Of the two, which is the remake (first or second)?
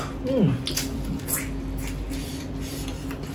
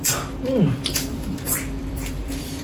second